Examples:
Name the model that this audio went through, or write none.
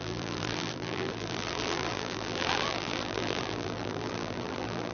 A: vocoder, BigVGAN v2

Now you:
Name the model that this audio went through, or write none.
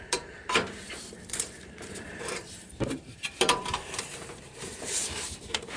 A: vocoder, BigVGAN v2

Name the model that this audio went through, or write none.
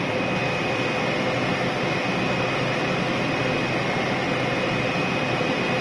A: none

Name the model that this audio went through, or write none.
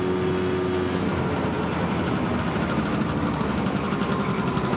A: none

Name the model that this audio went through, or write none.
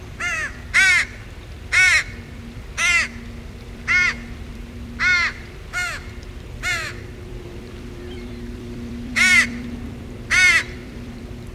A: vocoder, BigVGAN v2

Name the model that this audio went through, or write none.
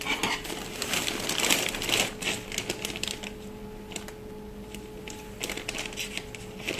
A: none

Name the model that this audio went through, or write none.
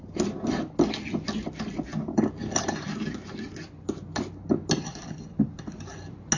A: none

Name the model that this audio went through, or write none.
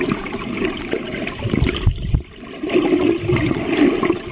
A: vocoder, BigVGAN v2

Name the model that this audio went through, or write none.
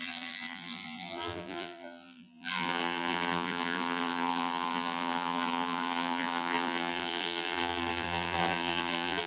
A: vocoder, BigVGAN v2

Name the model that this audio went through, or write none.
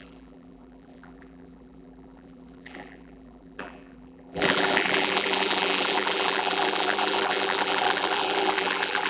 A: vocoder, BigVGAN v2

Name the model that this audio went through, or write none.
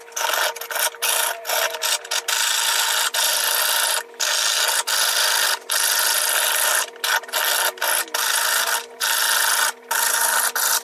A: none